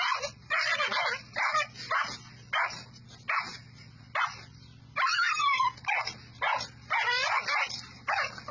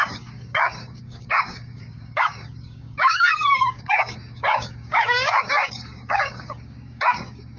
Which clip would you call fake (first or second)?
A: second